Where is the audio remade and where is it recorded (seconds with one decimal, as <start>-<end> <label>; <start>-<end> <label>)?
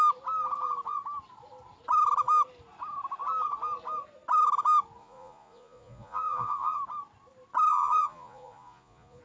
0.0-5.0 recorded; 5.0-6.8 remade; 6.8-7.7 recorded; 7.7-9.2 remade